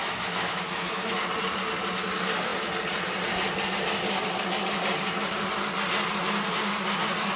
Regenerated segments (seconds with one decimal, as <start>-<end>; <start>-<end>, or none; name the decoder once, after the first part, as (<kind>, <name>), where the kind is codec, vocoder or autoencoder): 0.0-1.2 (autoencoder, DAC-VAE)